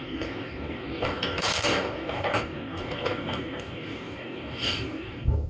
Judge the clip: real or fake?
fake